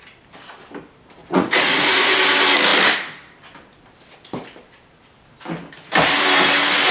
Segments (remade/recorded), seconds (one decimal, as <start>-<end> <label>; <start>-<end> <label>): 0.0-1.2 recorded; 1.2-2.1 remade; 2.1-6.9 recorded